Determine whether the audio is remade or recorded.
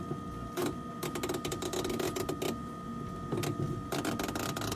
recorded